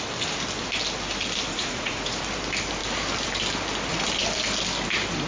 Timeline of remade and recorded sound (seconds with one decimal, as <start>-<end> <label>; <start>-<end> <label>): 0.0-1.5 recorded; 1.5-2.2 remade; 2.2-5.3 recorded